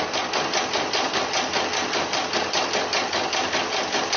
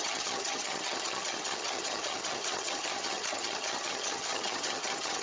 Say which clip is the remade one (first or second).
second